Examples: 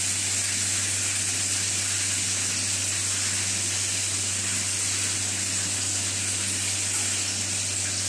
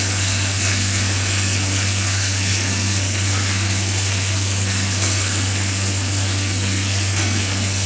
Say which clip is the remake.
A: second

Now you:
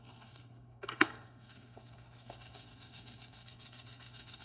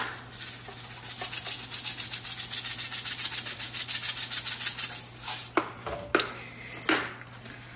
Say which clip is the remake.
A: first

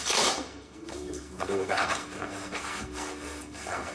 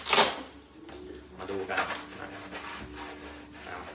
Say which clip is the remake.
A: first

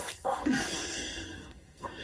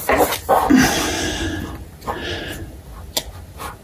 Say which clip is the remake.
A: first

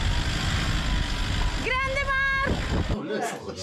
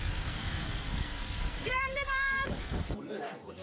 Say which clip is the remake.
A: second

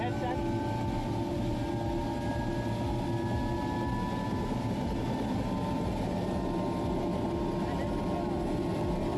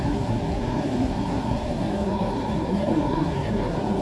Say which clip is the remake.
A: second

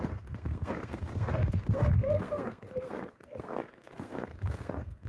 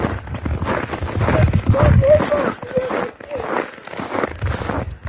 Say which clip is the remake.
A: first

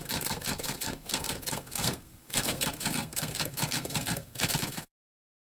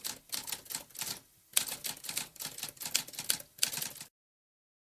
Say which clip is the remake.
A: first